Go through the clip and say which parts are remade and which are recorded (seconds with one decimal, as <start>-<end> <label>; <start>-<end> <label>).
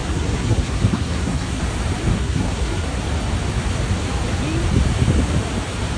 0.0-1.6 remade; 1.6-2.1 recorded; 2.1-3.0 remade; 3.0-6.0 recorded